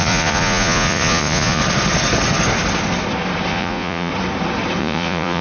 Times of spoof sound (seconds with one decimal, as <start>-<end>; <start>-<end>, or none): 0.0-1.6; 3.5-4.1; 4.8-5.4